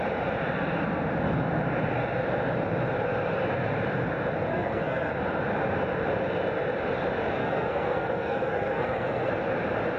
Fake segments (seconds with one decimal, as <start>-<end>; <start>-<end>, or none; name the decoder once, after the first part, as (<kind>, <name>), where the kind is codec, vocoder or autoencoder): 4.5-5.1 (codec, SNAC); 7.4-9.3